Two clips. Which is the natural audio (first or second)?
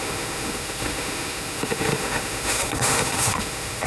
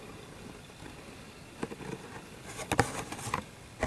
second